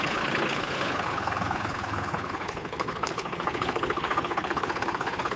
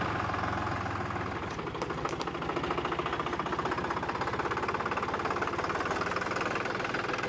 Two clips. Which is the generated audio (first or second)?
first